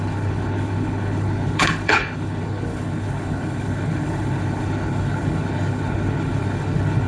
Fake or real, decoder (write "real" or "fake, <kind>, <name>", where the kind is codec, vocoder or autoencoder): fake, codec, HILCodec